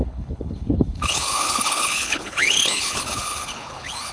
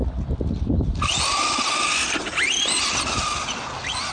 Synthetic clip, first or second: first